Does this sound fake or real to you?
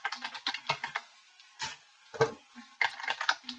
real